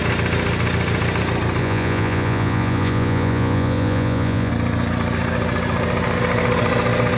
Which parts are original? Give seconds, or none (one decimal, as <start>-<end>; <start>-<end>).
0.0-1.6; 4.5-7.2